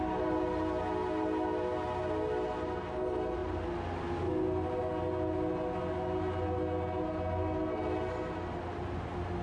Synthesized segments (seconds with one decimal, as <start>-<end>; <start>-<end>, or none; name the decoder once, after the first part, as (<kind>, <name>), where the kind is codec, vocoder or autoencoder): none